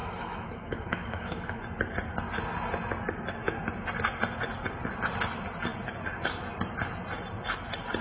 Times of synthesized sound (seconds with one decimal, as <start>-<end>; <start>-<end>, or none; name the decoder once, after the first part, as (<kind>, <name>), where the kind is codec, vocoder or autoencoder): 0.0-1.6 (autoencoder, DAC-VAE)